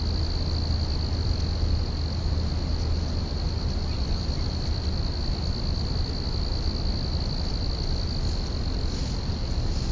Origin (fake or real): real